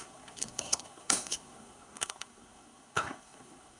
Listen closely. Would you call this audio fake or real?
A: fake